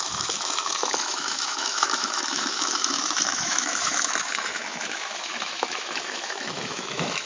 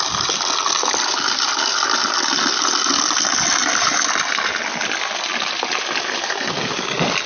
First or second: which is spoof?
first